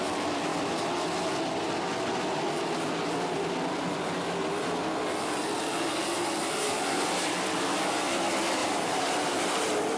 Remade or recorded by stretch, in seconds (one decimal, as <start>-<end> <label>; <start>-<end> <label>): 0.0-8.6 recorded; 8.6-9.5 remade; 9.5-10.0 recorded